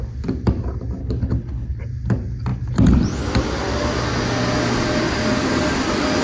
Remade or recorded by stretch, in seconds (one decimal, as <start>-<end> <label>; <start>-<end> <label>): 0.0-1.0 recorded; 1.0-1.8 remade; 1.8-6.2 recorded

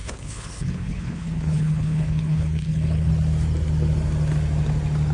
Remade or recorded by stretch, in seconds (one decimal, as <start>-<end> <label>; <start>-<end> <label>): 0.0-3.1 remade; 3.1-5.1 recorded

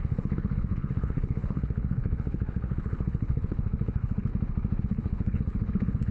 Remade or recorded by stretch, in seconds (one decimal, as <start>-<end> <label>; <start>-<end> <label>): 0.0-4.3 remade; 4.3-4.8 recorded; 4.8-6.1 remade

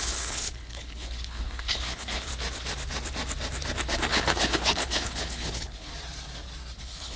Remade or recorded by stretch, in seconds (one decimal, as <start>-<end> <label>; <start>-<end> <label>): 0.0-2.3 remade; 2.3-4.1 recorded; 4.1-5.9 remade; 5.9-6.8 recorded; 6.8-7.2 remade

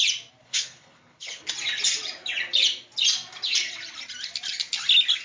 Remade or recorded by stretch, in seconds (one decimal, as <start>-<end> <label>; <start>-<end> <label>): 0.0-0.4 recorded; 0.4-1.5 remade; 1.5-5.2 recorded

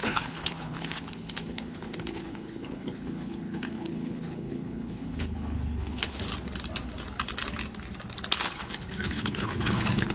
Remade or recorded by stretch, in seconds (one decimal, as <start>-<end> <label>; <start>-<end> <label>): 0.0-6.3 remade; 6.3-8.4 recorded; 8.4-10.1 remade

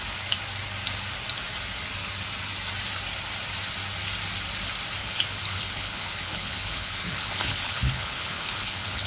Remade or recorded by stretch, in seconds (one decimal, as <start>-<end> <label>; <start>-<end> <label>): 0.0-5.0 recorded; 5.0-9.1 remade